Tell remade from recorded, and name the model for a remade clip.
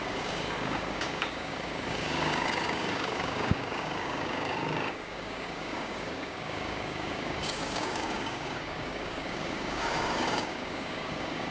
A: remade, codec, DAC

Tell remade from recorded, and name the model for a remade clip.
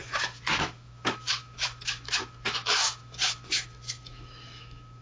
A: remade, autoencoder, DAC-VAE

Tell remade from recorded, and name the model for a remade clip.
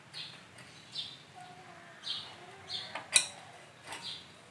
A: recorded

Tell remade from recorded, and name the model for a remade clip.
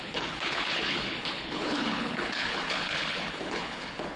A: remade, codec, HILCodec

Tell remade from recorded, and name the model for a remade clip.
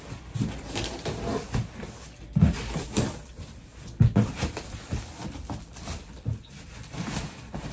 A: recorded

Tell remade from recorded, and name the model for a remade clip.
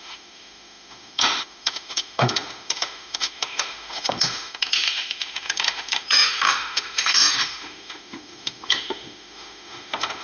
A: remade, autoencoder, DAC-VAE